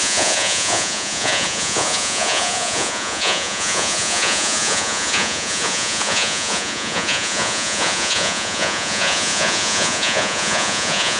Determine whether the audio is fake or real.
fake